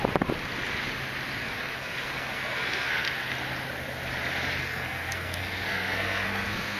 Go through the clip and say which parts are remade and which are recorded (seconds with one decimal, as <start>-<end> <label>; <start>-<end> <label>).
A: 0.0-1.4 recorded; 1.4-3.2 remade; 3.2-4.6 recorded; 4.6-6.8 remade